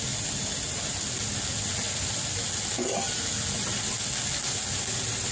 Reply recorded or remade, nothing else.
recorded